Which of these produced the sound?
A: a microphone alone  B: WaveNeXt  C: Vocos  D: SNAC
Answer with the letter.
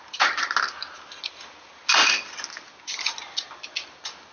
A